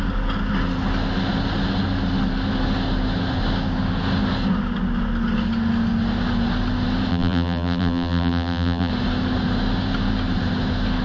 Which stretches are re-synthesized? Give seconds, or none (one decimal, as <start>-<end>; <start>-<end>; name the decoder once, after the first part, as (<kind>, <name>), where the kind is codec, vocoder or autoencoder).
7.1-8.9 (vocoder, BigVGAN v2)